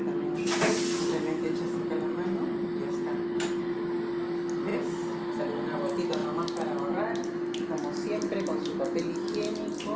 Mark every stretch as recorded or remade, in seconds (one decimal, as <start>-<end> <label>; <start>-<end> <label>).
0.0-10.0 recorded